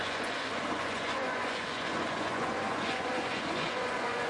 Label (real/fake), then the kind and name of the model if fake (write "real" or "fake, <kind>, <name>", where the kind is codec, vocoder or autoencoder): fake, vocoder, Vocos